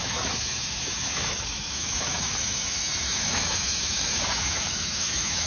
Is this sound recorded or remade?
remade